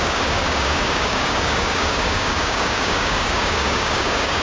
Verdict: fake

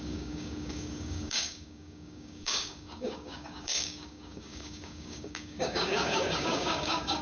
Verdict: fake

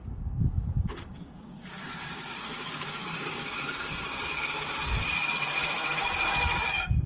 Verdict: fake